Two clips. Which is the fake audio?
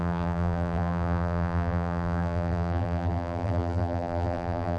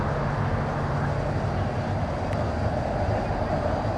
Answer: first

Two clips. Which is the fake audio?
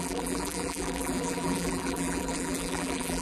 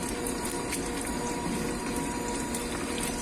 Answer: first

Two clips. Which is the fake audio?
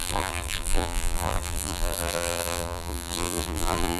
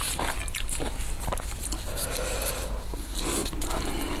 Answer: first